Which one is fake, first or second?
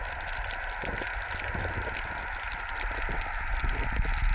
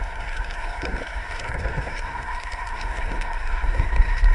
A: second